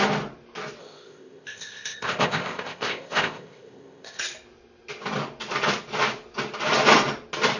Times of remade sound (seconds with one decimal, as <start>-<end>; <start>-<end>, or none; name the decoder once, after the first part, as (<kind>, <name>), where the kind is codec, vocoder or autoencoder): 0.8-4.2 (codec, ZipCodec)